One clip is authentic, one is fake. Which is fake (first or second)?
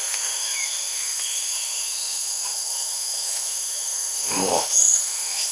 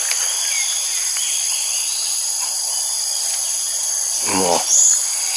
first